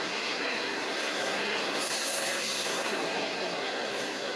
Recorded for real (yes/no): no